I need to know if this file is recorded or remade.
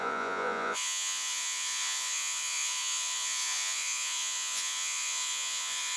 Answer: remade